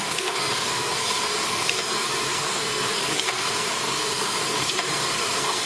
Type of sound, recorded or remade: remade